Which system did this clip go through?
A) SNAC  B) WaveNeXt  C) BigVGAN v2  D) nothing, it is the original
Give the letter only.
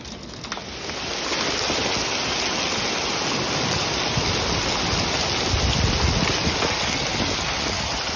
D